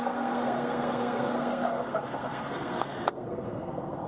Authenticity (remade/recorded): remade